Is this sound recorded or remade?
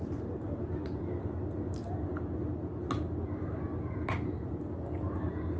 recorded